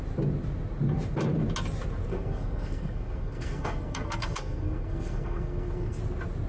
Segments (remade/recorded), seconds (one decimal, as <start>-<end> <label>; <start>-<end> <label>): 0.0-2.1 recorded; 2.1-6.0 remade; 6.0-6.5 recorded